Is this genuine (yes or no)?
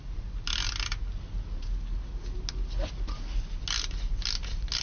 yes